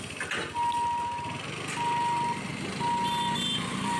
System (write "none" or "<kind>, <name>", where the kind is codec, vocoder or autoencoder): none